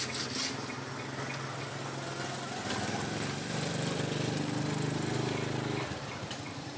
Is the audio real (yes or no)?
yes